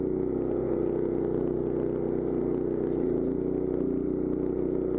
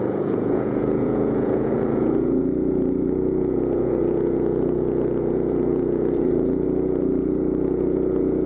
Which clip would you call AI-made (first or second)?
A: second